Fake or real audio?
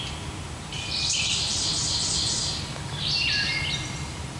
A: real